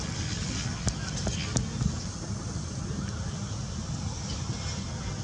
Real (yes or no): yes